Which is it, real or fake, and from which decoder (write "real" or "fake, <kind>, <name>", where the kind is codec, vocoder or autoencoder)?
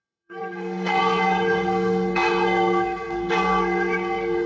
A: fake, codec, SNAC